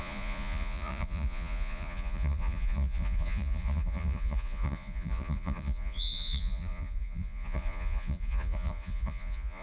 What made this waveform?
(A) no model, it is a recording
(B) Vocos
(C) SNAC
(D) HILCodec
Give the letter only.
B